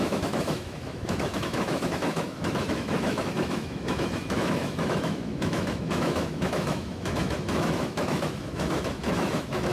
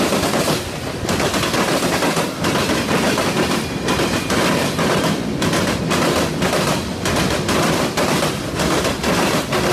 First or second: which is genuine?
second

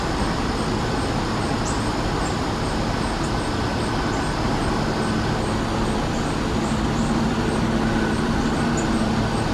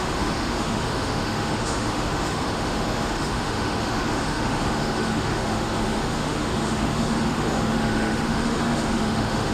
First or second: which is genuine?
first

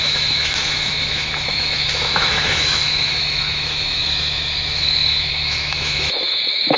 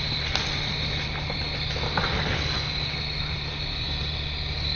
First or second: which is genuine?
second